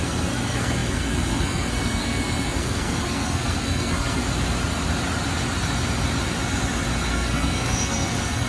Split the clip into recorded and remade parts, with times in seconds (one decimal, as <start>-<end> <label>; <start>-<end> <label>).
0.0-4.2 remade; 4.2-7.1 recorded; 7.1-8.5 remade